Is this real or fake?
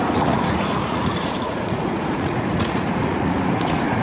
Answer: fake